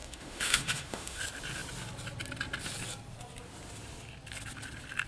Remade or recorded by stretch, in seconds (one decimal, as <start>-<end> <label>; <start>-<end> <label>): 0.0-1.2 remade; 1.2-5.1 recorded